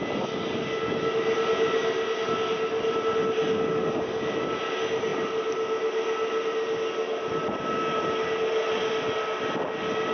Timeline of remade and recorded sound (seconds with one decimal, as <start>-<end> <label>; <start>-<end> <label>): 0.0-10.1 recorded